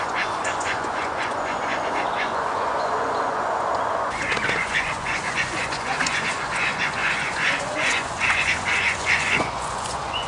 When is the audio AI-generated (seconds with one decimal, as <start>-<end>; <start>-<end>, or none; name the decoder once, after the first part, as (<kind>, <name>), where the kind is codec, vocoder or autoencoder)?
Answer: 0.0-10.3 (vocoder, Vocos)